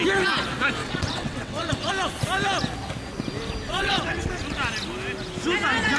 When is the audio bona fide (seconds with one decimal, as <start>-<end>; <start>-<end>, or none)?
0.0-0.8; 1.9-3.7; 4.3-6.0

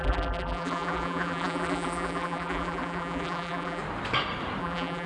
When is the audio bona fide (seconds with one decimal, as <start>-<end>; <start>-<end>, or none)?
3.8-4.6